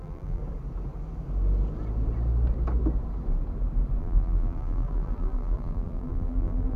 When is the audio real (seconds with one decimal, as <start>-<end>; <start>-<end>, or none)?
0.4-4.0